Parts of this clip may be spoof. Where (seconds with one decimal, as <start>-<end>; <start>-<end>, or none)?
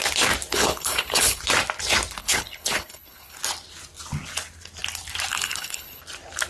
0.5-1.4; 2.2-3.4; 5.3-6.0